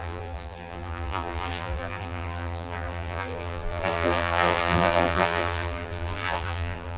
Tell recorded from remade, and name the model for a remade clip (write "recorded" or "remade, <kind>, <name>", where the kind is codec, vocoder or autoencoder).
remade, vocoder, BigVGAN v2